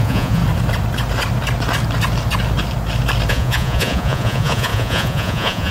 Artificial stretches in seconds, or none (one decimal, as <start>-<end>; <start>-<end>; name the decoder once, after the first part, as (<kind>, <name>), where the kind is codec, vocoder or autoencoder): 0.0-0.4 (vocoder, Vocos); 3.3-5.7